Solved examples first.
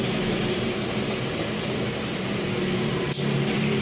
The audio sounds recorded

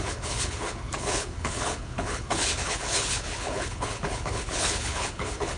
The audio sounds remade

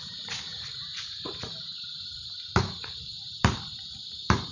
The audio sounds remade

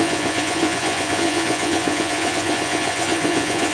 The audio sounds remade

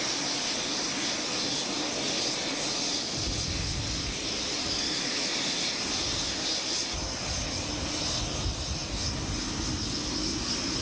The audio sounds recorded